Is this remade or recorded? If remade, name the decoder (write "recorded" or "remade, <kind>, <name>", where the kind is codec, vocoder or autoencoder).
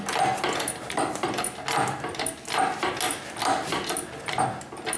recorded